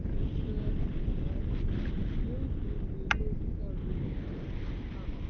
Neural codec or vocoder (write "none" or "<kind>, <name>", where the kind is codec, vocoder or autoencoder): none